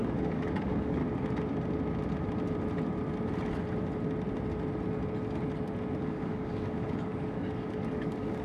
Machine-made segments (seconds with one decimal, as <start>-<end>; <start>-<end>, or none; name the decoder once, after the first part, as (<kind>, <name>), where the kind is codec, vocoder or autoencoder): 0.0-1.0 (codec, DAC); 6.0-8.4